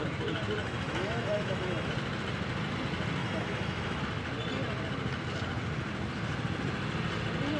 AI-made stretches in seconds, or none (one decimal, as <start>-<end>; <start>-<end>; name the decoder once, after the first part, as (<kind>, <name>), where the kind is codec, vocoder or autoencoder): 0.6-1.9 (autoencoder, DAC-VAE); 3.2-4.0